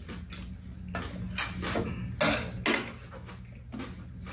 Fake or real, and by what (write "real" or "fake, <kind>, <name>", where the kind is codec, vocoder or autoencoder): real